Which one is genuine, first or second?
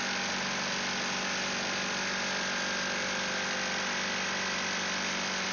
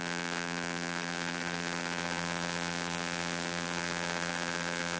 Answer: first